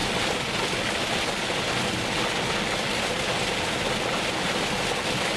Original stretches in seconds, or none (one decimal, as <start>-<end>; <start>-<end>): 0.0-5.4